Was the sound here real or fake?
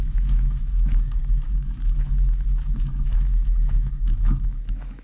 fake